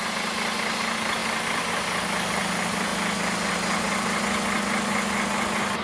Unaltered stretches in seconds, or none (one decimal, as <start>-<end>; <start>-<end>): 0.0-5.8